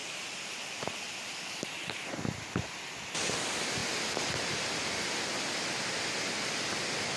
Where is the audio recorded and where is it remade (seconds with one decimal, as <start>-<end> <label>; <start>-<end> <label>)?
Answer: 0.0-1.2 remade; 1.2-7.2 recorded